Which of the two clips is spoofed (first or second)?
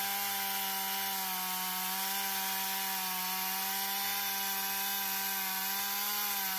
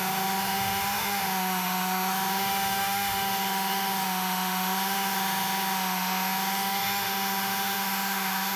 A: second